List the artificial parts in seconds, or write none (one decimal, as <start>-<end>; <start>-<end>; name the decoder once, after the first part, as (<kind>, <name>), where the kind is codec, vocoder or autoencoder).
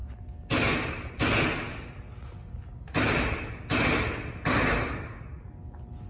none